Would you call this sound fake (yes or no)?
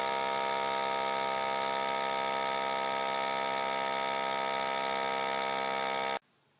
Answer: no